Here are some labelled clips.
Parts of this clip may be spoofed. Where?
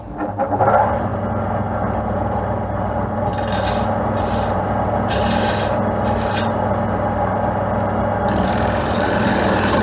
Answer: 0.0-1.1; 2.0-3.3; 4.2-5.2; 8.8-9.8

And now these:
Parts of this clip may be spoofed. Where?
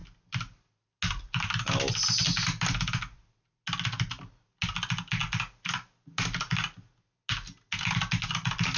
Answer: none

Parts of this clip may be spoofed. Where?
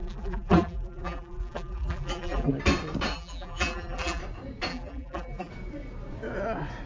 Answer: 0.0-2.5; 3.1-4.2; 4.7-5.5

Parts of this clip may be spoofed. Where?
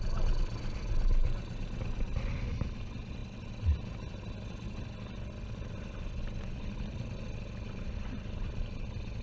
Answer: 1.1-1.7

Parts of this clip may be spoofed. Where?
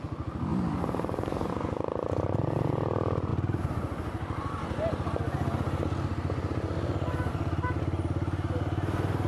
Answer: 0.5-1.5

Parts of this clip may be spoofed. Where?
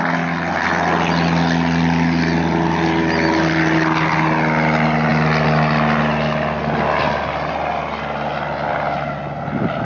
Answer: none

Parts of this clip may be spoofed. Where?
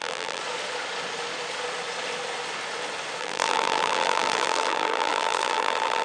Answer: 0.0-0.4; 3.2-6.0